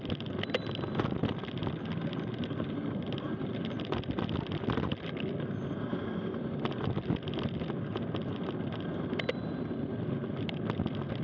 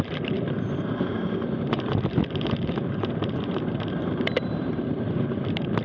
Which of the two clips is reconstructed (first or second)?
second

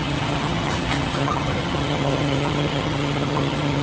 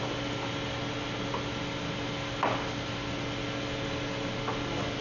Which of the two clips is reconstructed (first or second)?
first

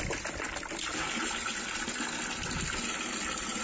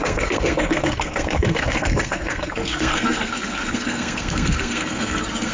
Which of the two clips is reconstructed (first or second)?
second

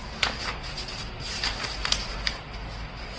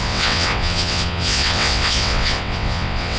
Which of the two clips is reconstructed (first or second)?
second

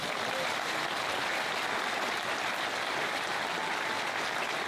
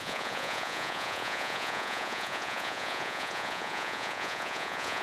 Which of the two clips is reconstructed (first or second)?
second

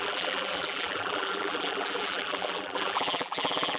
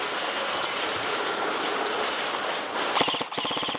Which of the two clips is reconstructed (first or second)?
first